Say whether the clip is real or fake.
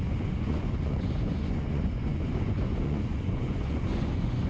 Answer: fake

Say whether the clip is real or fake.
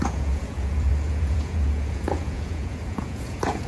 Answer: fake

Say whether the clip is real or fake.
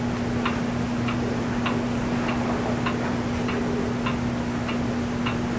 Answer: real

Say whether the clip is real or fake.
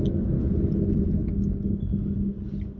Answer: real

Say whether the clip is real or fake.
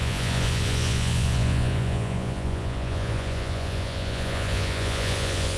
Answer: fake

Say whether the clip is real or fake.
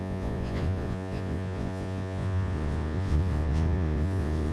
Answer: fake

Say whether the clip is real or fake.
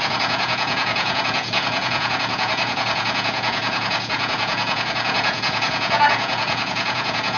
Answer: fake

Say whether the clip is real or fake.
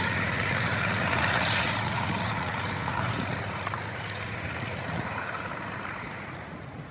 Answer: fake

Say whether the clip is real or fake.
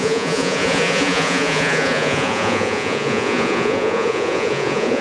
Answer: fake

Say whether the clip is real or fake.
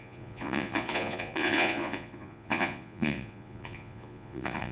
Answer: fake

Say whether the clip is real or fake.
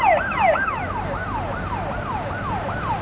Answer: real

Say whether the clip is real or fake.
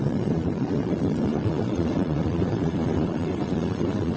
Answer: fake